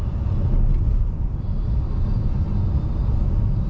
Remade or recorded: recorded